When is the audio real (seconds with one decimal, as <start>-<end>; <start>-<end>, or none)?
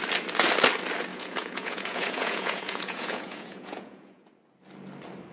0.0-1.1; 4.3-5.3